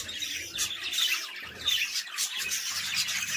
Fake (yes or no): no